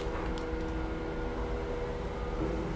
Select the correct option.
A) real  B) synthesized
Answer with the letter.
A